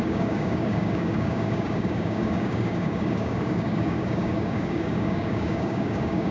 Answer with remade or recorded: remade